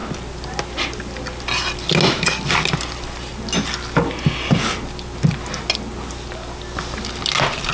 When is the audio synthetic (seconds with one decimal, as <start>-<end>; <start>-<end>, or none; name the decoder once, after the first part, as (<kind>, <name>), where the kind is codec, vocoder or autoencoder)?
none